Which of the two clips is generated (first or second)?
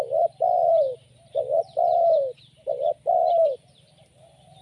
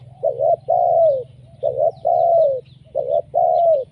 first